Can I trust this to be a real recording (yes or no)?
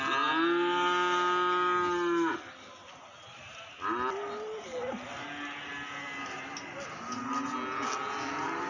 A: yes